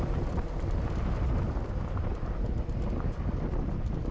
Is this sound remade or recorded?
recorded